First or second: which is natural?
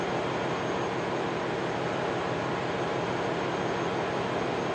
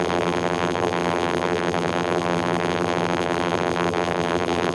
first